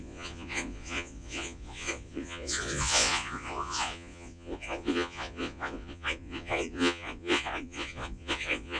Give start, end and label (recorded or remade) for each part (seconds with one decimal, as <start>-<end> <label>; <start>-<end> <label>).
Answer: 0.0-8.8 remade

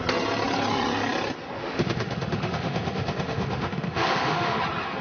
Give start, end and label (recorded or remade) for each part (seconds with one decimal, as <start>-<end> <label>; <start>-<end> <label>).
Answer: 0.0-1.6 recorded; 1.6-4.6 remade; 4.6-5.0 recorded

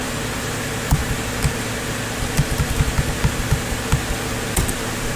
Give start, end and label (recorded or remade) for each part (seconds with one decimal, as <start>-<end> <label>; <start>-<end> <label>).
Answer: 0.0-5.2 recorded

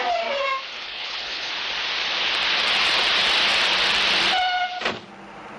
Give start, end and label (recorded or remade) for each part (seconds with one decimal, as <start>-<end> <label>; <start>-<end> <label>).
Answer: 0.0-0.7 recorded; 0.7-1.5 remade; 1.5-5.6 recorded

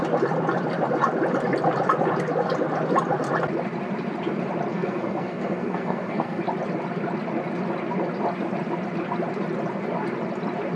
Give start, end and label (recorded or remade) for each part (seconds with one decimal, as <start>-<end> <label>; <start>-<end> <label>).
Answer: 0.0-4.7 recorded; 4.7-6.4 remade; 6.4-10.8 recorded

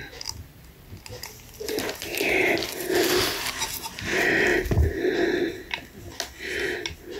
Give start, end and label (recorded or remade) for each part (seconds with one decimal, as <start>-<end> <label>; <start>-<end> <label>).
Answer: 0.0-7.2 recorded

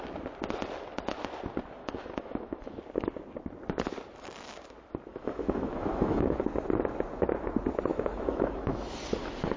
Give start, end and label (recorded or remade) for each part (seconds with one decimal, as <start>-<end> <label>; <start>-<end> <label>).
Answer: 0.0-1.8 recorded; 1.8-2.8 remade; 2.8-5.1 recorded; 5.1-6.4 remade; 6.4-7.9 recorded; 7.9-9.0 remade; 9.0-9.6 recorded

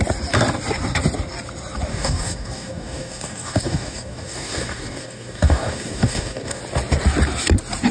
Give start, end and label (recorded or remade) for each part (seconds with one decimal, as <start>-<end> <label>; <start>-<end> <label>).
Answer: 0.0-1.9 recorded; 1.9-6.6 remade; 6.6-7.9 recorded